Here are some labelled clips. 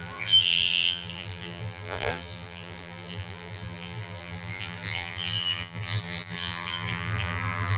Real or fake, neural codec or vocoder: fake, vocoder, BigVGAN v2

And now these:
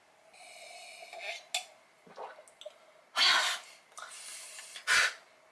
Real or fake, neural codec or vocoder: real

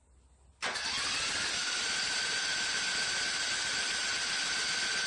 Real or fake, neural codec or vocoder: real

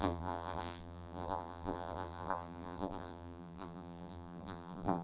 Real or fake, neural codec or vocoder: fake, vocoder, BigVGAN v2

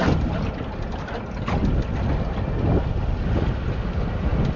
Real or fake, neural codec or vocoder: real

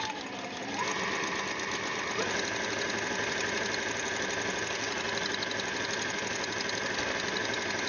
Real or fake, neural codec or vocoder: real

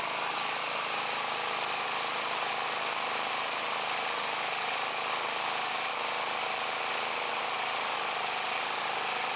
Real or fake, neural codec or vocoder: real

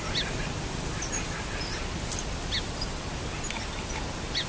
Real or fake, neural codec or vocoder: real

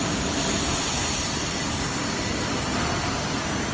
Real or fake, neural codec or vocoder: real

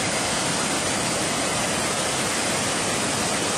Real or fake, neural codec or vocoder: fake, vocoder, BigVGAN v2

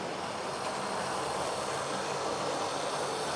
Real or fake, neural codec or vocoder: real